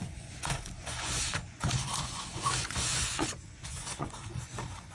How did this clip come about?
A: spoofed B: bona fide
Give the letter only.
A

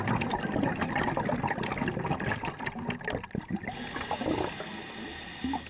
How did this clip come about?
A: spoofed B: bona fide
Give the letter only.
B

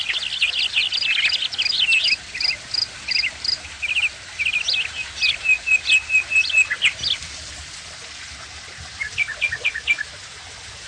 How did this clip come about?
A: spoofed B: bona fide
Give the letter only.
B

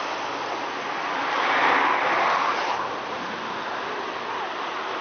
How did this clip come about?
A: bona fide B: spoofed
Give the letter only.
A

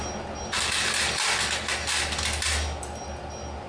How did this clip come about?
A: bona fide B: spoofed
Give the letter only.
A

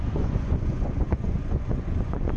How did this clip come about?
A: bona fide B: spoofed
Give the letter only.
B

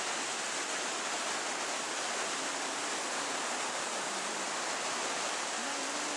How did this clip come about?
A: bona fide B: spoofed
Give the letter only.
A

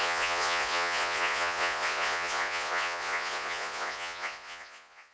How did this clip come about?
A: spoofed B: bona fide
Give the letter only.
A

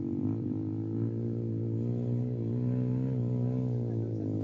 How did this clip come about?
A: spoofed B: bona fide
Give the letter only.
B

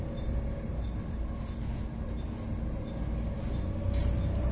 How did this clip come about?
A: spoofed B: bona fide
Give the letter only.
B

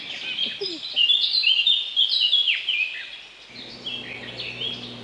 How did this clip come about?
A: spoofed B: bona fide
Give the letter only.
B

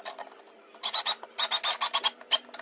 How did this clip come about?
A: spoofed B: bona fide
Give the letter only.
B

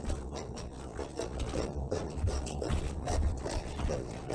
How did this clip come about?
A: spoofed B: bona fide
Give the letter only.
A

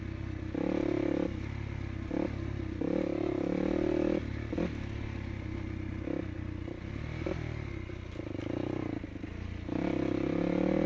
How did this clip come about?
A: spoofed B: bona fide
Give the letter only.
B